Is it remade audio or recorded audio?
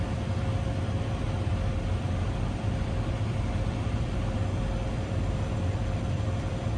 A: remade